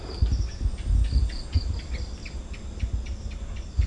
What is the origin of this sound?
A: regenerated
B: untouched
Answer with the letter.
B